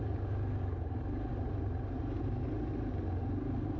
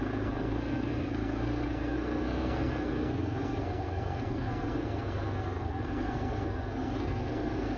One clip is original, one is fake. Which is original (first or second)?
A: first